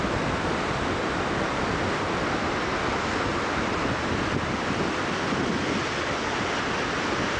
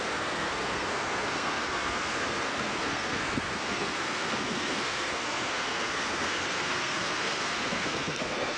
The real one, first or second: first